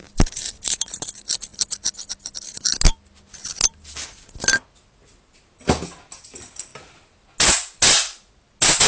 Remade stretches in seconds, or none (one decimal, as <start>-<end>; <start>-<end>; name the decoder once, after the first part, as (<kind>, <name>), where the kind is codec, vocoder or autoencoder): none